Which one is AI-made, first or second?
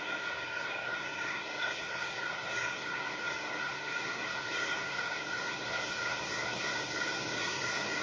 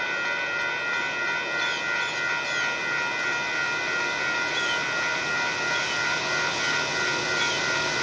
first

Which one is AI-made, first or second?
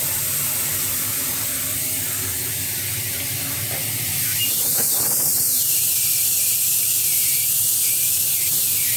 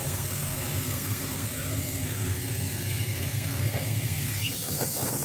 second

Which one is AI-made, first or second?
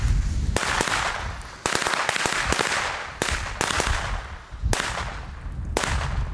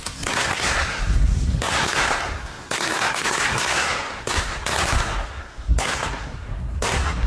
second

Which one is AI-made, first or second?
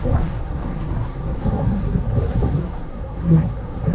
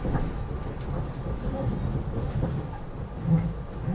first